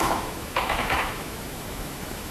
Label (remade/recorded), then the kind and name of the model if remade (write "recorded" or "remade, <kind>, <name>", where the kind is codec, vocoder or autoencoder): remade, autoencoder, DAC-VAE